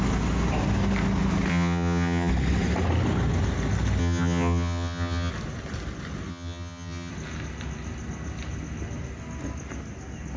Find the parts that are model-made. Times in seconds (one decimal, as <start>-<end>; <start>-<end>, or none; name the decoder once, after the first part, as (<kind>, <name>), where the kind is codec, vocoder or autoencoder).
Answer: 1.5-2.3 (vocoder, HiFi-GAN); 4.0-5.3; 6.3-7.1